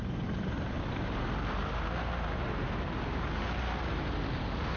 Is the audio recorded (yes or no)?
no